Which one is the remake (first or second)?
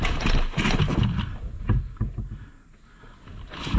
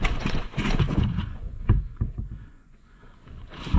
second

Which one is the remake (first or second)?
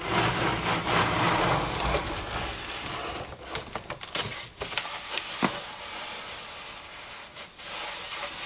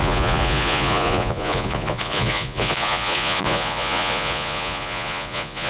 second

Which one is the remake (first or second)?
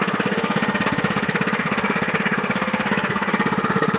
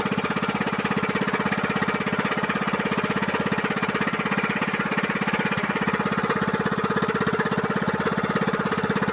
first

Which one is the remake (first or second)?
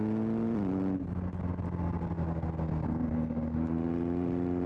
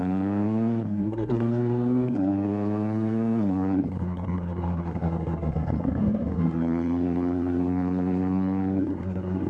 second